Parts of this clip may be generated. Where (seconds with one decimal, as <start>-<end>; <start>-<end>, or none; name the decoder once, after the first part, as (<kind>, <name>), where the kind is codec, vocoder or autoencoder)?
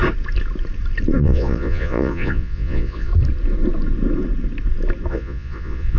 1.2-3.1 (vocoder, Vocos); 5.1-6.0